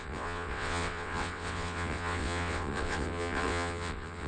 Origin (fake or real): fake